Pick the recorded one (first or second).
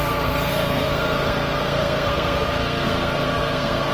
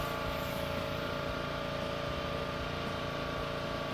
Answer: second